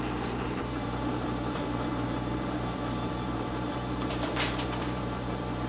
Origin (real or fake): fake